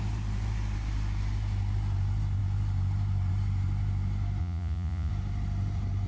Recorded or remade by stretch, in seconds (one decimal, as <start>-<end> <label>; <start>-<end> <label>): 0.0-4.4 recorded; 4.4-5.1 remade; 5.1-6.1 recorded